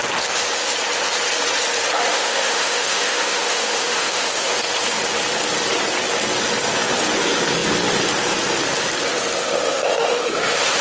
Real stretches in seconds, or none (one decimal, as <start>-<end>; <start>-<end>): 0.0-2.1; 4.5-9.4